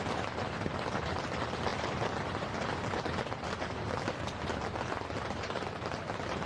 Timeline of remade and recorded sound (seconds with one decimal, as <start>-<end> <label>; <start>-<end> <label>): 0.0-6.5 recorded